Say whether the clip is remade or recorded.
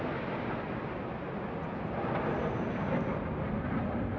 recorded